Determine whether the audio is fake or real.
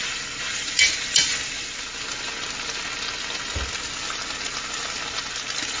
real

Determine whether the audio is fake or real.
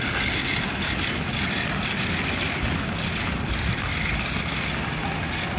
real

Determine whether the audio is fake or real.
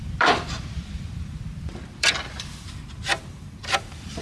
fake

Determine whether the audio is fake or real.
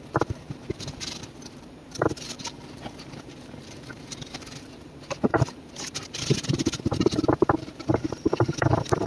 fake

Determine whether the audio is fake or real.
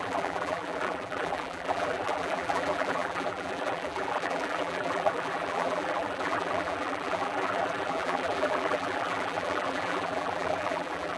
fake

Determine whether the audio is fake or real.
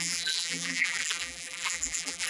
fake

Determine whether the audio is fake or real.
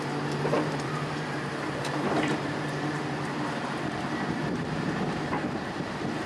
fake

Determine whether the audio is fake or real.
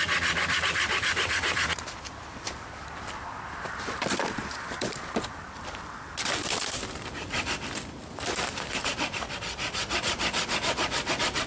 fake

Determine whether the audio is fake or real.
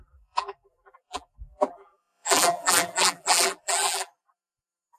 fake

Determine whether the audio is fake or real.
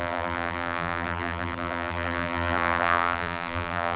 fake